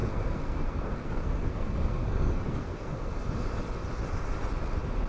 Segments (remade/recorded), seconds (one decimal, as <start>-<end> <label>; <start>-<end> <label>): 0.0-3.1 remade; 3.1-5.1 recorded